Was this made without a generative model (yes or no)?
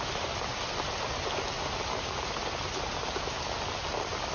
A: yes